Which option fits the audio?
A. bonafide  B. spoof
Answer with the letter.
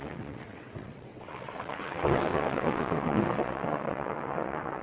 B